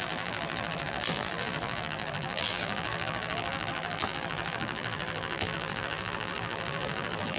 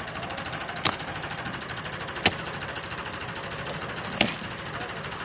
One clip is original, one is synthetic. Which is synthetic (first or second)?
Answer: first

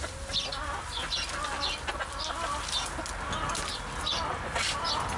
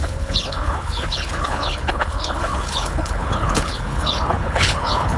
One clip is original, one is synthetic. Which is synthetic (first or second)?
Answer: second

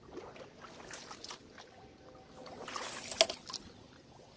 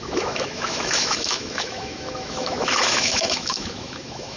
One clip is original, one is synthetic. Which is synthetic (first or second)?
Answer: second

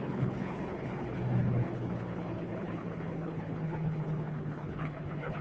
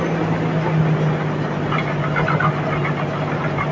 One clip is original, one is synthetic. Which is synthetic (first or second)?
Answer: first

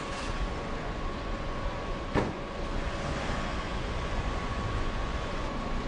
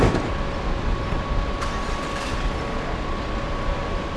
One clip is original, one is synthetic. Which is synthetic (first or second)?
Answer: first